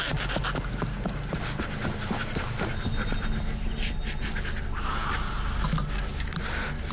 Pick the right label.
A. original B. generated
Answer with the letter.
A